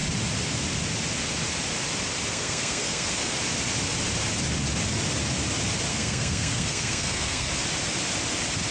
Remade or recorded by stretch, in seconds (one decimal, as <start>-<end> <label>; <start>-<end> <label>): 0.0-2.3 recorded; 2.3-3.3 remade; 3.3-5.9 recorded; 5.9-7.5 remade; 7.5-8.7 recorded